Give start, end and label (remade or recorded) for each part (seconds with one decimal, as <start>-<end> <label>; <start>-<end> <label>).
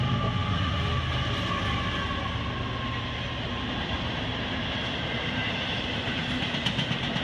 0.0-7.2 recorded